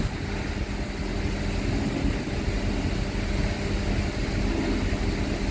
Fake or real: real